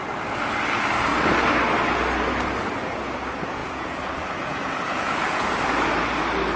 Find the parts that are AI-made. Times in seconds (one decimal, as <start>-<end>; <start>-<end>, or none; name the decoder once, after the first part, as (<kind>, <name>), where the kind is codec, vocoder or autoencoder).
3.6-5.5 (vocoder, Vocos)